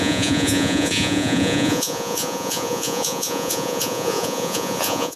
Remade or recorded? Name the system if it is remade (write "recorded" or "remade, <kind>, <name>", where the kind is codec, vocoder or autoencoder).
remade, vocoder, Vocos